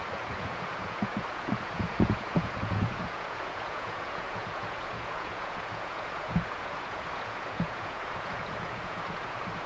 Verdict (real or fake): fake